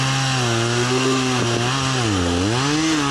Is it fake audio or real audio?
real